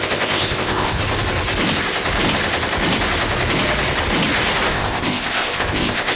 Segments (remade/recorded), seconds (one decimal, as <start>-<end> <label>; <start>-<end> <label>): 0.0-1.0 remade; 1.0-4.7 recorded; 4.7-6.2 remade